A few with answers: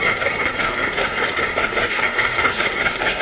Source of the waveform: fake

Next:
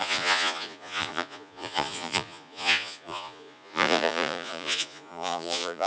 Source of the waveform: fake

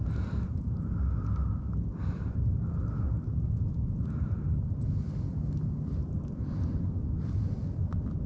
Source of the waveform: real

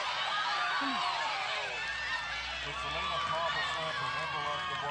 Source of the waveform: real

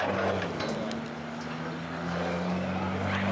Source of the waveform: real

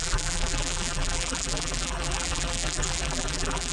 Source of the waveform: fake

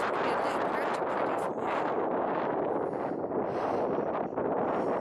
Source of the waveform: real